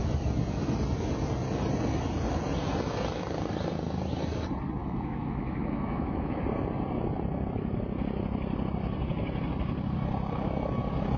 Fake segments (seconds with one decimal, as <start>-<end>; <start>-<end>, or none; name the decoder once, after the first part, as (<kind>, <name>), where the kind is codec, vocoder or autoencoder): 4.8-6.4 (autoencoder, DAC-VAE)